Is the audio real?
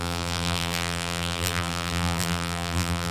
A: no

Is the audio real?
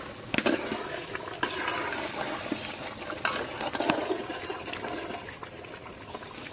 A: yes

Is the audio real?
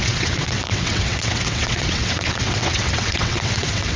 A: no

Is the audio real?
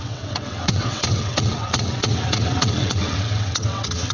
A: no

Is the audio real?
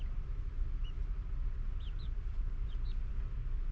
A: no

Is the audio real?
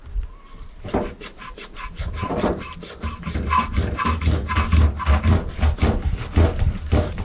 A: yes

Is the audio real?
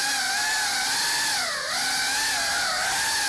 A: yes